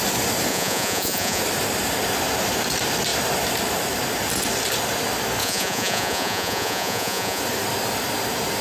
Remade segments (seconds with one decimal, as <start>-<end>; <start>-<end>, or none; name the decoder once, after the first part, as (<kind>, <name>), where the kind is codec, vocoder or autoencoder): 0.5-1.4 (vocoder, Vocos); 5.4-7.4